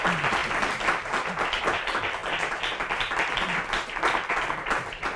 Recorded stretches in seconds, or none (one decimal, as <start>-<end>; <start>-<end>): 2.2-4.3